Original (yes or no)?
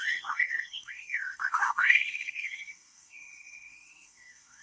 no